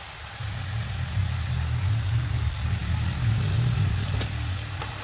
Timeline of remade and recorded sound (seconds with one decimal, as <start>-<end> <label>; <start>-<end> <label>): 0.0-1.2 recorded; 1.2-2.4 remade; 2.4-5.0 recorded